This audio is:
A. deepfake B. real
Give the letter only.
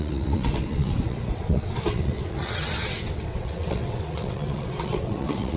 A